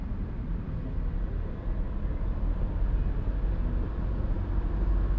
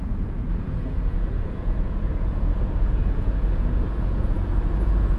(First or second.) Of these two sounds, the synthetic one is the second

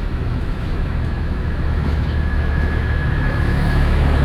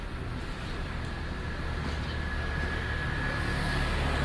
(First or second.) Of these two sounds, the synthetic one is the first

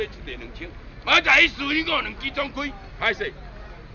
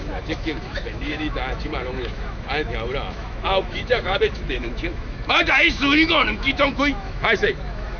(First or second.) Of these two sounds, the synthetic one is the second